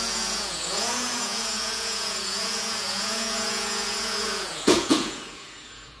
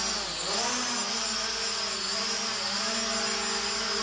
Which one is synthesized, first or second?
first